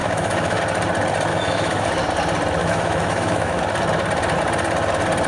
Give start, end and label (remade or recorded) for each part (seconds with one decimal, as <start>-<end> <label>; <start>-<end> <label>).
0.0-0.6 remade; 0.6-1.3 recorded; 1.3-1.9 remade; 1.9-2.6 recorded; 2.6-3.6 remade; 3.6-5.3 recorded